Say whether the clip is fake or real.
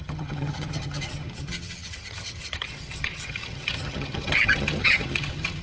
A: fake